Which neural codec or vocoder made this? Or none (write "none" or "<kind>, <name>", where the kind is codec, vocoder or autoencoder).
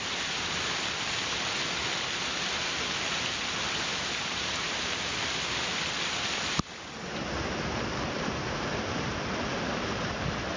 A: none